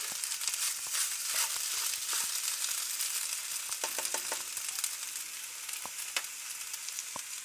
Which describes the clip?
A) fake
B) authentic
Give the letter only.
B